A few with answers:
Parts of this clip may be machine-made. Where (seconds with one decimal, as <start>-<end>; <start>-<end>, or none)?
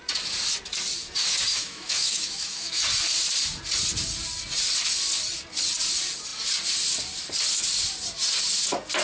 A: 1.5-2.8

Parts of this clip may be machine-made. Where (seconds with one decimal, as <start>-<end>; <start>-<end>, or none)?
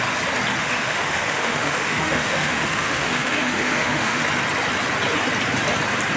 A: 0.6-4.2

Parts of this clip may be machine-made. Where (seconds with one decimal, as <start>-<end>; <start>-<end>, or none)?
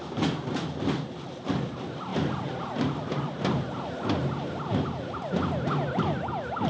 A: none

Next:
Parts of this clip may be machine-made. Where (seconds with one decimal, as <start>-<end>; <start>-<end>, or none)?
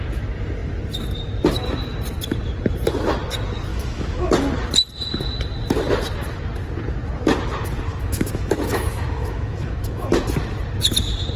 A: 3.7-4.3; 7.9-10.1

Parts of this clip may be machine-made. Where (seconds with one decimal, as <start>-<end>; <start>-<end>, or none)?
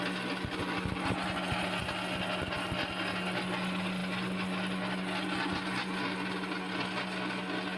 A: none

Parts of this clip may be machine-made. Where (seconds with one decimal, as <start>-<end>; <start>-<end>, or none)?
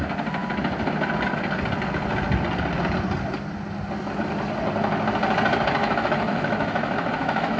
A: 5.8-7.6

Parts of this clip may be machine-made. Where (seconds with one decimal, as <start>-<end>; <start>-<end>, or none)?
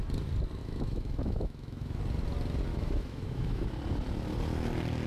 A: 0.6-2.0; 2.7-3.7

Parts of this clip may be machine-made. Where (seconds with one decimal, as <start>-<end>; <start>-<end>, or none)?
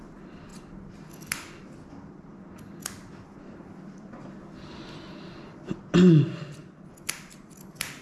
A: none